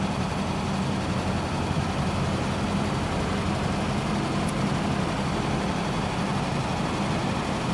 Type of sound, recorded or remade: recorded